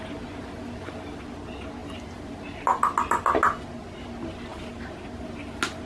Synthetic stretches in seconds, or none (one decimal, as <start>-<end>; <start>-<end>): none